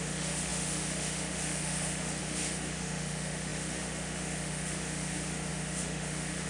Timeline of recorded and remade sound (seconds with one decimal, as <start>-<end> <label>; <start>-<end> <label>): 0.0-6.5 remade